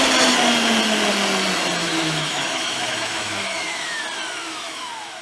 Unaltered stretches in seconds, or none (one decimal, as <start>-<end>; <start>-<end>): 0.0-1.8; 4.0-4.4